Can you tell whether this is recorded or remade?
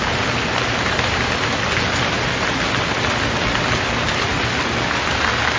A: recorded